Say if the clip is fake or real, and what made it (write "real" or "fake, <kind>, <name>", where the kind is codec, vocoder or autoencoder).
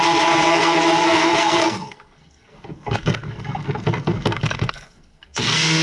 fake, codec, SNAC